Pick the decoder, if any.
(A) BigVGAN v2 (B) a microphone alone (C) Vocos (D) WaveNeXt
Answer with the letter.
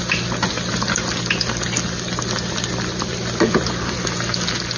B